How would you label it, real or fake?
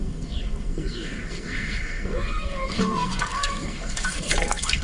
fake